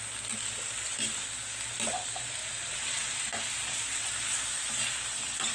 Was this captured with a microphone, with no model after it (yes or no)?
yes